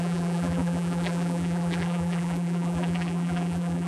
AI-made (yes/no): yes